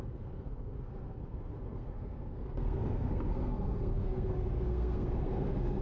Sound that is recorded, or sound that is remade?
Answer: remade